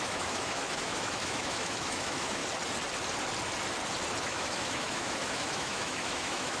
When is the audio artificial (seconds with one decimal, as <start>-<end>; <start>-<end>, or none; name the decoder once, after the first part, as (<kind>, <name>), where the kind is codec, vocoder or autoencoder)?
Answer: 0.0-2.4 (autoencoder, DAC-VAE); 4.2-6.6